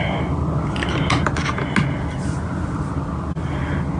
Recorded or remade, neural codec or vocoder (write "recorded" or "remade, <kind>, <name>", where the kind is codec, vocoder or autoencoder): recorded